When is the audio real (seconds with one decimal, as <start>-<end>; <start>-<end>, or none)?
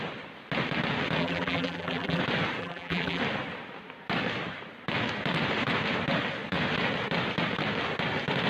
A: 0.0-1.2; 2.2-2.6; 3.2-8.5